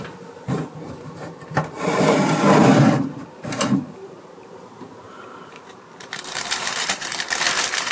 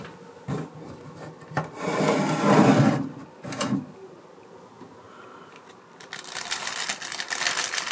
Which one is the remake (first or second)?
first